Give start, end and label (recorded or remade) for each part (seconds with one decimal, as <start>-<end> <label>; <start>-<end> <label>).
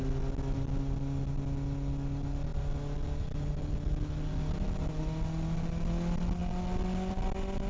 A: 0.0-7.7 recorded